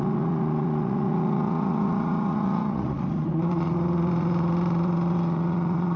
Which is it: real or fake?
fake